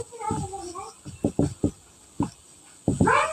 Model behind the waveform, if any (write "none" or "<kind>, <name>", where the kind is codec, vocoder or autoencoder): none